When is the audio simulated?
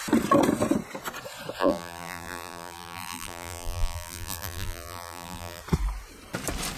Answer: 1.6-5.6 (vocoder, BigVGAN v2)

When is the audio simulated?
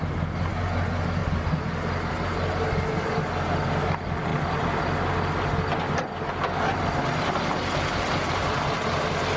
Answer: 7.6-8.5 (vocoder, BigVGAN v2)